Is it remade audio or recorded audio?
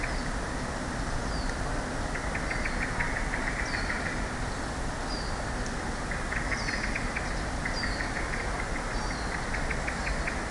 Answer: recorded